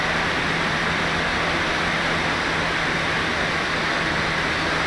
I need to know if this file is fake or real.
real